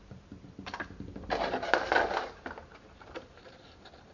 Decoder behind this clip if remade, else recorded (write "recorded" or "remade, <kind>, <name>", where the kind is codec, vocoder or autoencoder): recorded